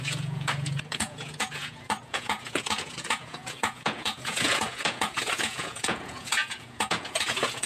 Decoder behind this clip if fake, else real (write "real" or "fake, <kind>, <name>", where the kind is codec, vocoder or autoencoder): fake, vocoder, Vocos